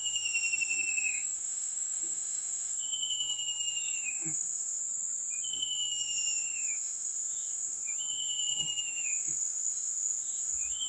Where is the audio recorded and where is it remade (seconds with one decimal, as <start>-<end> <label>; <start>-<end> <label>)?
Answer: 0.0-4.8 remade; 4.8-5.5 recorded; 5.5-10.9 remade